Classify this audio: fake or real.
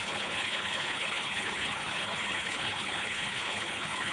fake